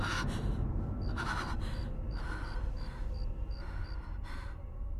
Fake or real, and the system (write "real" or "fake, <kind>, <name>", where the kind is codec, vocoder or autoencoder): real